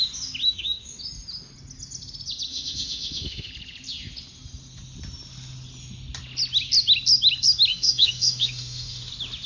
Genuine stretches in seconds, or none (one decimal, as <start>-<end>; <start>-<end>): 0.0-0.4; 1.0-2.5; 3.5-7.7; 9.1-9.5